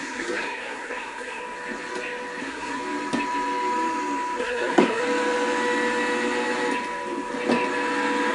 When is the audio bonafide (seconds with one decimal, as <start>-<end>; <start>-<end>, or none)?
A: 1.4-2.4; 2.8-4.4; 5.0-8.3

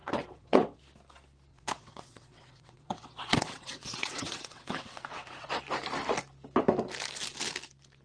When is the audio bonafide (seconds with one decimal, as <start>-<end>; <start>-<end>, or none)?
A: 0.8-1.5; 5.5-8.0